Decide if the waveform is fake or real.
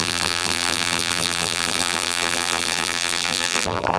fake